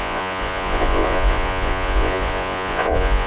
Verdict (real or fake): fake